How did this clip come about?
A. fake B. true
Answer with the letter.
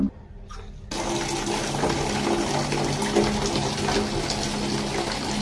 B